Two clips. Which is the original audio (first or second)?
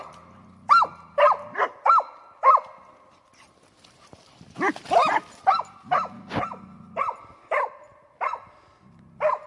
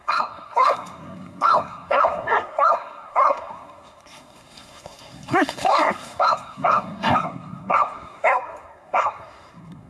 first